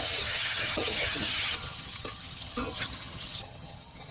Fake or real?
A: fake